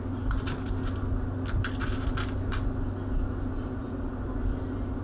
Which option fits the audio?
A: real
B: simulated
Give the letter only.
A